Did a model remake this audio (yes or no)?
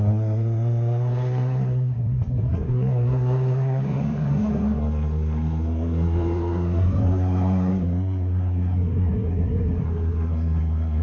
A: yes